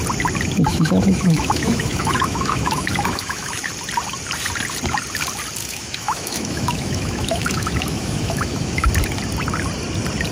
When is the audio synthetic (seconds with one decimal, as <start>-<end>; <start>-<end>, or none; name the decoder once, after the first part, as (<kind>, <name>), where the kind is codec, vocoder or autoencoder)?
0.7-3.7 (autoencoder, DAC-VAE); 5.6-8.9

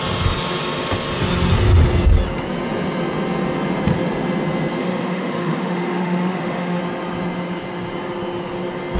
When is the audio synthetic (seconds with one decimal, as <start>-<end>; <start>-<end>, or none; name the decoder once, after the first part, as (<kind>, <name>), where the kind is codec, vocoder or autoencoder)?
4.8-6.8 (autoencoder, DAC-VAE)

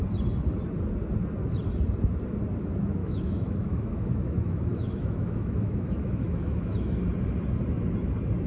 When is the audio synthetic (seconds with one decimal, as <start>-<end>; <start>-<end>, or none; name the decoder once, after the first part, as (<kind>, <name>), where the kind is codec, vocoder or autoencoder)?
3.0-7.1 (autoencoder, DAC-VAE)

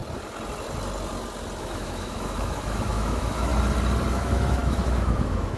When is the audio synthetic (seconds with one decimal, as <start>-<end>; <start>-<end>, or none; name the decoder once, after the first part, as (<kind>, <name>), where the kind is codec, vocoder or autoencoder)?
1.6-3.5 (autoencoder, DAC-VAE); 4.1-5.6

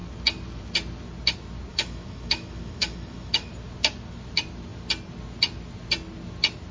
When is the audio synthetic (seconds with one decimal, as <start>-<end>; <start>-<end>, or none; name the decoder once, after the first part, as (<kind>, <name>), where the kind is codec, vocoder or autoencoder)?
1.7-3.5 (autoencoder, DAC-VAE)